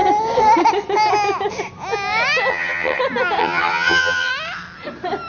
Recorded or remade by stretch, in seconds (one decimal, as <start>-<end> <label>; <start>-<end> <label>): 0.0-2.5 recorded; 2.5-3.0 remade; 3.0-3.4 recorded; 3.4-4.3 remade; 4.3-5.3 recorded